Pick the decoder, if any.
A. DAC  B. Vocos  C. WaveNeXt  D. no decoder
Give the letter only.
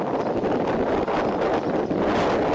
D